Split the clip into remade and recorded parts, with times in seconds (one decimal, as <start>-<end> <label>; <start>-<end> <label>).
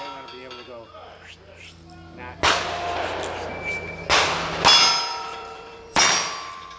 0.0-5.1 recorded; 5.1-6.0 remade; 6.0-6.8 recorded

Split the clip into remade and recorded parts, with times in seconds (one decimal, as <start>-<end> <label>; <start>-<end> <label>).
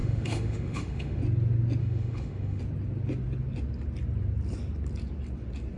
0.0-1.2 remade; 1.2-1.8 recorded; 1.8-2.6 remade; 2.6-5.8 recorded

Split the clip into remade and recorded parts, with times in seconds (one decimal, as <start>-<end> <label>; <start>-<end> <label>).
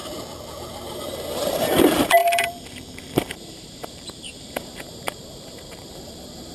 0.0-0.9 recorded; 0.9-6.5 remade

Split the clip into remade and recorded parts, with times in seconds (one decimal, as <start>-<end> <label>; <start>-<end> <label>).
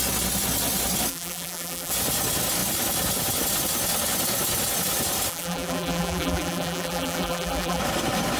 0.0-1.1 recorded; 1.1-1.9 remade; 1.9-5.3 recorded; 5.3-7.8 remade; 7.8-8.4 recorded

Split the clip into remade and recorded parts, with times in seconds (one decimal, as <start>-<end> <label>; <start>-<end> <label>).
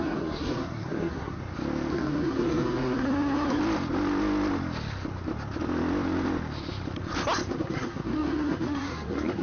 0.0-1.4 remade; 1.4-1.9 recorded; 1.9-3.6 remade; 3.6-7.5 recorded; 7.5-9.4 remade